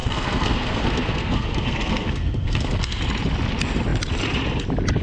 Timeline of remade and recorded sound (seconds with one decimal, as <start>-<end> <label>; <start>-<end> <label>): 0.0-3.0 remade; 3.0-5.0 recorded